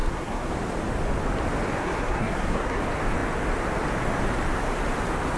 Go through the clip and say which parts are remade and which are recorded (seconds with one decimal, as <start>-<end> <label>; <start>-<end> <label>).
0.0-0.5 remade; 0.5-1.8 recorded; 1.8-2.8 remade; 2.8-5.4 recorded